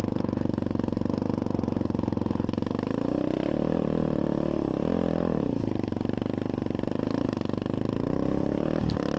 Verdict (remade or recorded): recorded